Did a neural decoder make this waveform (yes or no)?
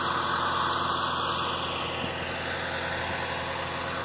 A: no